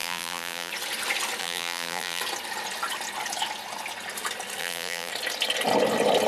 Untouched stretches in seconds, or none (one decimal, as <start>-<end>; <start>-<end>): 0.7-1.4; 2.2-4.6; 5.1-6.3